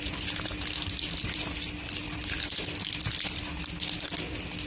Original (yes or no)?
yes